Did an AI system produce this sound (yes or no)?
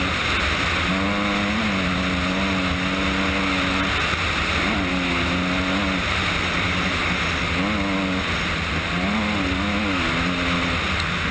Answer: no